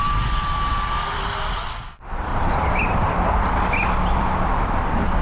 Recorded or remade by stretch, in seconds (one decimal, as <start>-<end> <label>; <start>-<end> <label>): 0.0-0.7 recorded; 0.7-1.3 remade; 1.3-2.3 recorded; 2.3-4.8 remade; 4.8-5.2 recorded